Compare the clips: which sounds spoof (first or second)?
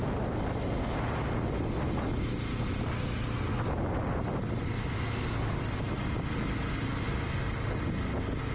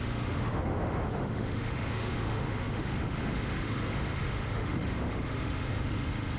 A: second